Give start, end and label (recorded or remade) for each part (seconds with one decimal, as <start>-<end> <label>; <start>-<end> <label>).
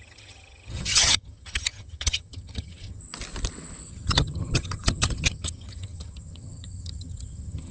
0.0-3.0 remade; 3.0-3.9 recorded; 3.9-7.7 remade